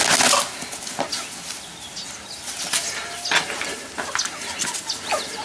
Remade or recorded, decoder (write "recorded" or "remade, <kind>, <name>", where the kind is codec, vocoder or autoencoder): recorded